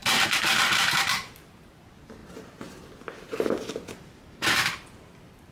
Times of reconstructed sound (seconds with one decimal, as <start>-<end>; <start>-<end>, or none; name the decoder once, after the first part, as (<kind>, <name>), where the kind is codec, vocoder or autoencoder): 0.0-1.5 (vocoder, BigVGAN v2)